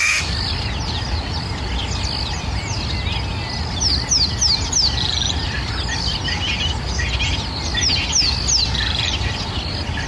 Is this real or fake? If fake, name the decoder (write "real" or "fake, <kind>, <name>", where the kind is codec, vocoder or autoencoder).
real